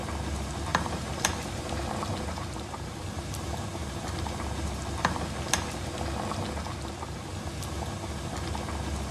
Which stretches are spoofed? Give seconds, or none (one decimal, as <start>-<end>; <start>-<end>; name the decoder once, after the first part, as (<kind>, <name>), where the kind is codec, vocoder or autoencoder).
0.7-5.2 (vocoder, BigVGAN v2)